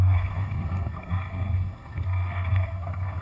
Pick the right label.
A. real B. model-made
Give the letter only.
B